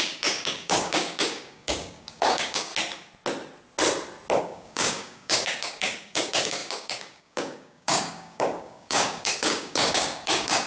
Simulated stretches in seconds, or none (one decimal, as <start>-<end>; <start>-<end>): 0.0-2.7; 4.4-10.7